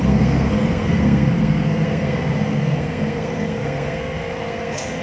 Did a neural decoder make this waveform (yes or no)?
yes